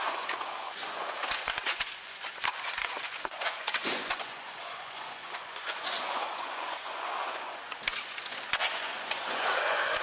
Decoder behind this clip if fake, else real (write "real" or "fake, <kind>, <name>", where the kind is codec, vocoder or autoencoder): fake, vocoder, Vocos